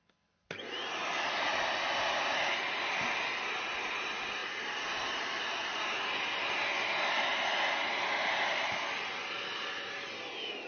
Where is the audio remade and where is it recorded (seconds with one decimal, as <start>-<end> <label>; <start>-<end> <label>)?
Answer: 0.0-10.7 recorded